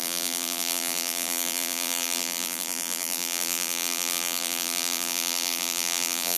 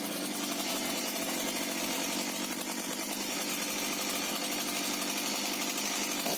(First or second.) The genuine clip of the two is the second